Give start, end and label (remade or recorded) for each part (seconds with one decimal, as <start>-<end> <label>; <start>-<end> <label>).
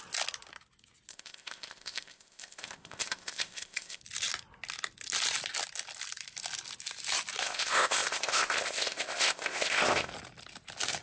0.0-1.1 recorded; 1.1-4.0 remade; 4.0-7.4 recorded; 7.4-10.1 remade; 10.1-11.0 recorded